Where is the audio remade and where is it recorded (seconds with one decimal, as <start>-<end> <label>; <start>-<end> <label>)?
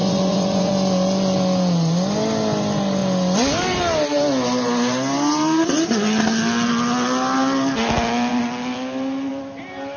0.0-0.7 remade; 0.7-10.0 recorded